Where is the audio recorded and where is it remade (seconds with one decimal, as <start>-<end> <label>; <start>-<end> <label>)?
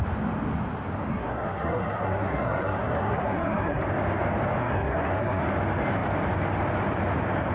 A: 0.0-1.1 recorded; 1.1-3.8 remade; 3.8-4.6 recorded; 4.6-5.4 remade; 5.4-7.5 recorded